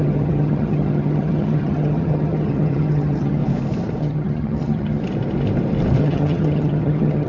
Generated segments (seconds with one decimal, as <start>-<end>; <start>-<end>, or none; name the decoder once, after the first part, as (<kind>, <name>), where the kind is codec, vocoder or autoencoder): 0.0-3.4 (vocoder, HiFi-GAN); 4.0-5.0; 6.0-7.3

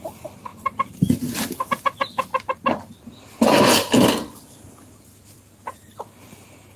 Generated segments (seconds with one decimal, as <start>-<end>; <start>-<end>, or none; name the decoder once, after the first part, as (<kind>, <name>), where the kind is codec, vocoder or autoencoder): 0.0-2.3 (vocoder, BigVGAN v2); 4.7-6.8